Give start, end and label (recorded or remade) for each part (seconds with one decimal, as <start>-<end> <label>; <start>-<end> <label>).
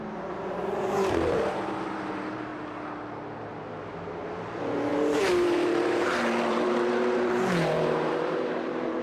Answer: 0.0-2.5 remade; 2.5-4.3 recorded; 4.3-9.0 remade